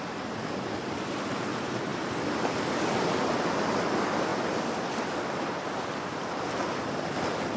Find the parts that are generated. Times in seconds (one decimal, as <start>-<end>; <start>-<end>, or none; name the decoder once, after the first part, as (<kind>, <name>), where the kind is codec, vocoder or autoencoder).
none